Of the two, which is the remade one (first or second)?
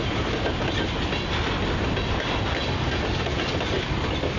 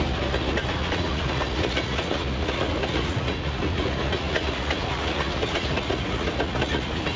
second